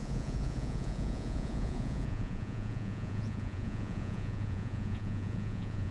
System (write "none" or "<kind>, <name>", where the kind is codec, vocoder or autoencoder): vocoder, Vocos